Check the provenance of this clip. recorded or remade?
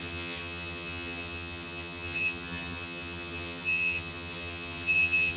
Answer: remade